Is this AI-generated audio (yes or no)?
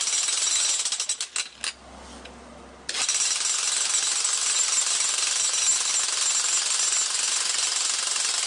no